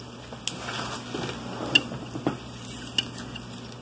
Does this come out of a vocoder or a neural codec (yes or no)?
no